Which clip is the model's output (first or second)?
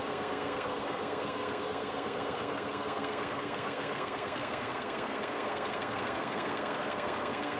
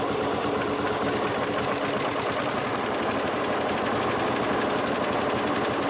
first